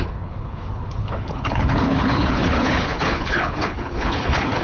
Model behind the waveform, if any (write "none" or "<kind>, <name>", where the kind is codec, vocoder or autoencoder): codec, HILCodec